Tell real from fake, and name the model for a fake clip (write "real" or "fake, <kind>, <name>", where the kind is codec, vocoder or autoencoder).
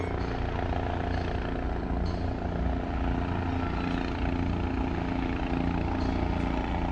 real